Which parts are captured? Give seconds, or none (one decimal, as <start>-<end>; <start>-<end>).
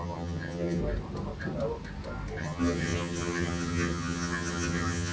0.8-2.4